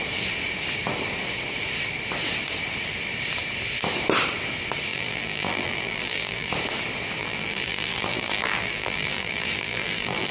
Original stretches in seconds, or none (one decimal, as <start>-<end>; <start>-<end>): 0.0-4.9; 6.5-7.2